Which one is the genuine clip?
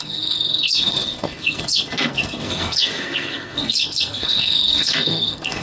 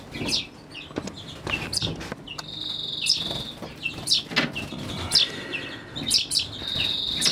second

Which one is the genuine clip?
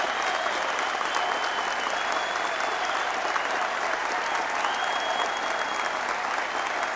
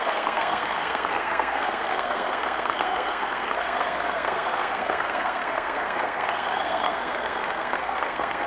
first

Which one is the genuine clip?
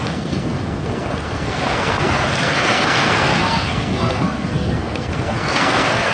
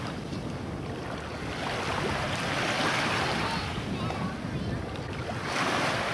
second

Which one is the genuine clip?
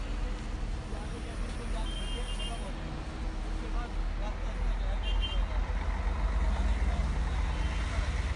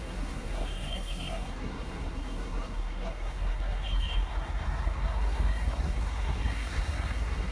first